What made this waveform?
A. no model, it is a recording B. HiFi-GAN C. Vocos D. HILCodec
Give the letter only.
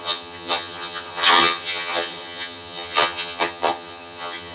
B